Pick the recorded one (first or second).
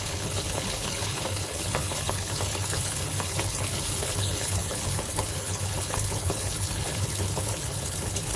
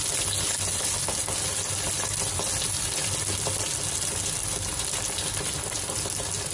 second